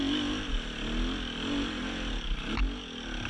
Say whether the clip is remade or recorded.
recorded